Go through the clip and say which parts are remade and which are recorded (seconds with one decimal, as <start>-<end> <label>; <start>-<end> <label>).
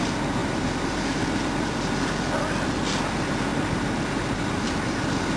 0.0-0.4 recorded; 0.4-1.2 remade; 1.2-3.5 recorded; 3.5-4.8 remade; 4.8-5.4 recorded